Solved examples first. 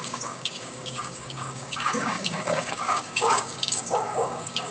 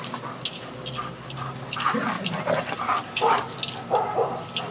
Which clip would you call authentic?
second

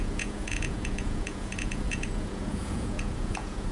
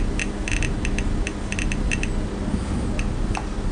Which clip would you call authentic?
second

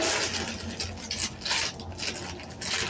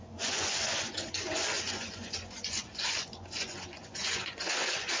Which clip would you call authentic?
first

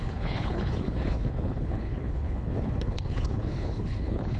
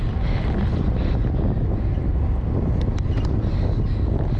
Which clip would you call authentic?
second